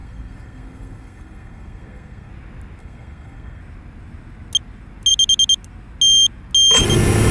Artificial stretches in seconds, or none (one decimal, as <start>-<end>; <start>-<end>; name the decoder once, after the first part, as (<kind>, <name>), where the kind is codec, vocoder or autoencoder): 0.0-2.3 (codec, SNAC); 2.8-3.6